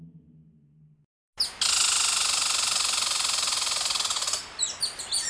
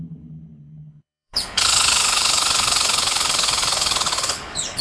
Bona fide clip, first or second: first